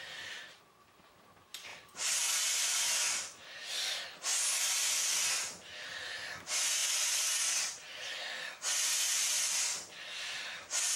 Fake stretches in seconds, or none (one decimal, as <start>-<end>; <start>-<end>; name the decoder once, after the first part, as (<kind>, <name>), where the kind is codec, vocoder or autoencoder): 1.7-3.7 (vocoder, BigVGAN v2)